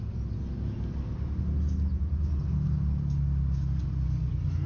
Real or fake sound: real